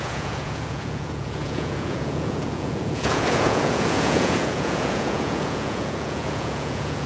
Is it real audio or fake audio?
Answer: fake